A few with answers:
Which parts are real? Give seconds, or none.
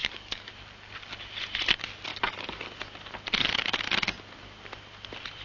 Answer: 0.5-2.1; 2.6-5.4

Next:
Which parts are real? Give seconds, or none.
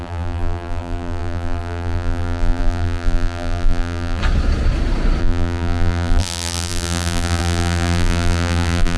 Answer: 4.2-5.2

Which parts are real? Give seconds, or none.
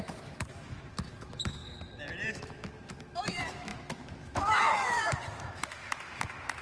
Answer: 1.6-2.3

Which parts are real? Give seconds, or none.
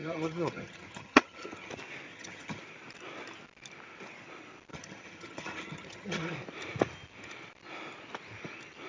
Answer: 1.7-2.1; 2.6-4.7; 6.3-8.9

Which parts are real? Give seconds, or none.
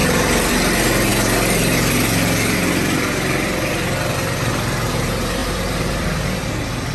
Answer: 0.5-5.4; 6.5-6.9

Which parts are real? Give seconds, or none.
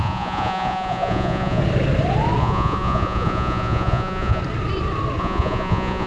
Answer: 1.6-2.4; 4.4-5.2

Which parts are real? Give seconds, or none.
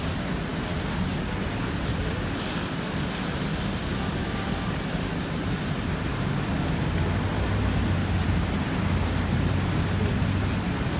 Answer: 0.0-4.2; 6.2-8.0; 8.6-11.0